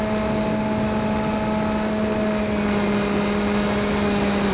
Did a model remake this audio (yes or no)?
no